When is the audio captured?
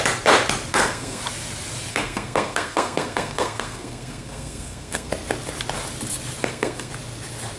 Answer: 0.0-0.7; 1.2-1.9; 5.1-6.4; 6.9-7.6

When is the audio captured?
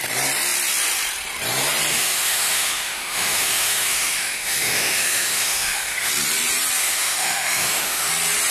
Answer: 0.0-1.9; 6.1-6.8; 8.1-8.5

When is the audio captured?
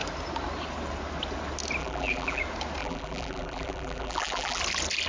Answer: 0.0-1.8; 2.4-2.8; 4.6-5.1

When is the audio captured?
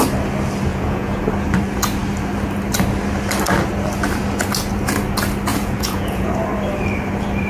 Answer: 0.0-0.7; 1.2-5.5; 6.3-7.5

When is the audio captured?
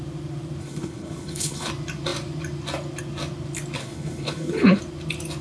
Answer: 0.0-0.6; 1.7-3.8; 4.8-5.4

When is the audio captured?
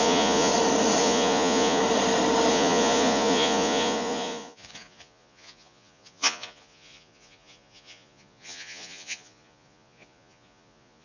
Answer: 0.5-1.0; 1.8-2.5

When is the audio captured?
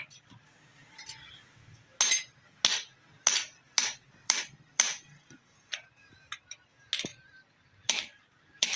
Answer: 0.0-3.1; 5.8-7.1